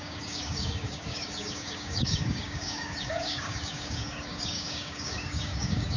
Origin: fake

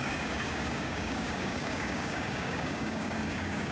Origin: fake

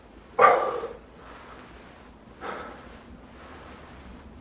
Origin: real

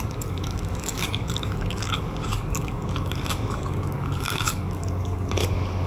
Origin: fake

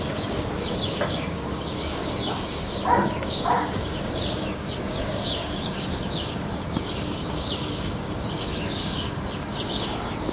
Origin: fake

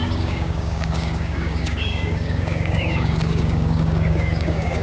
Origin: fake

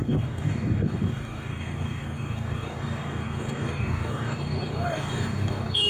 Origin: fake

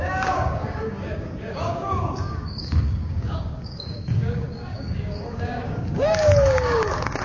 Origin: fake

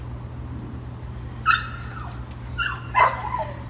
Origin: real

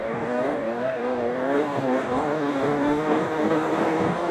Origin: fake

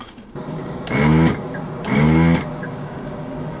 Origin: fake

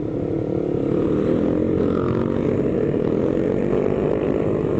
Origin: real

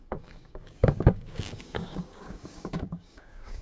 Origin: fake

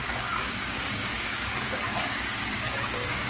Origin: fake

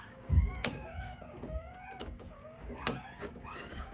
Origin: fake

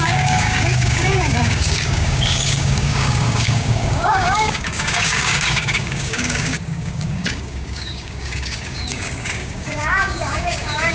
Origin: fake